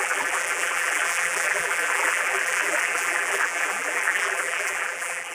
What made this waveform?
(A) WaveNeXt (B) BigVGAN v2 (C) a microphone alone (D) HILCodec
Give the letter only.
B